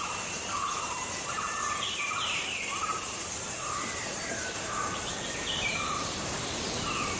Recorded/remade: remade